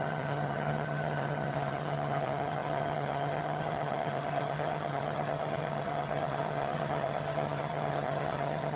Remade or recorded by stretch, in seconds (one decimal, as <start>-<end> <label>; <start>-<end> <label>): 0.0-8.8 remade